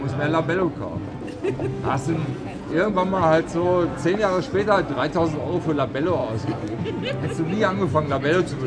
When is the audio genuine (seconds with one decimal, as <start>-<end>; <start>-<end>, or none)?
0.0-2.2; 2.9-8.7